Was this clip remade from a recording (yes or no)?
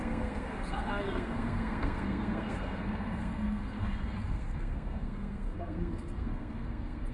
yes